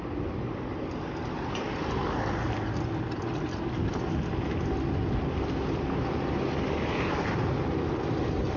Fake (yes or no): no